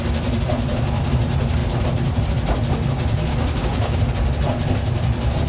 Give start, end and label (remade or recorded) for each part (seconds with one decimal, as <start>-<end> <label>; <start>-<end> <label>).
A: 0.0-3.3 recorded; 3.3-4.1 remade; 4.1-5.5 recorded